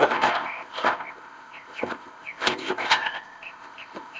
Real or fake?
fake